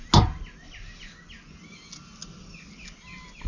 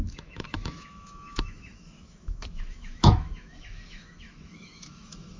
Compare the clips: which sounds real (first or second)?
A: first